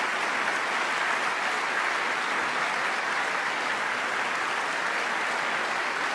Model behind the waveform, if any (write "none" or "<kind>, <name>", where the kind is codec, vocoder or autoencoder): none